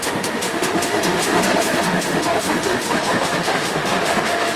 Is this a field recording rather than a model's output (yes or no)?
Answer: no